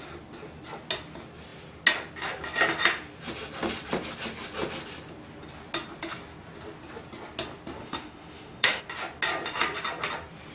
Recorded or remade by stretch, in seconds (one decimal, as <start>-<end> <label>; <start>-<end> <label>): 0.0-7.8 recorded; 7.8-8.8 remade; 8.8-10.5 recorded